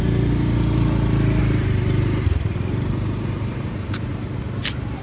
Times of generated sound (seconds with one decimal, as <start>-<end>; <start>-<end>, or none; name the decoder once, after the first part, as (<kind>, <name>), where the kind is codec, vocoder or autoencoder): 1.4-4.4 (vocoder, BigVGAN v2)